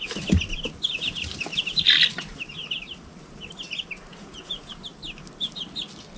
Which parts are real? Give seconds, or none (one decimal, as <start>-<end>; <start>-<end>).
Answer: 0.0-4.1; 4.7-6.2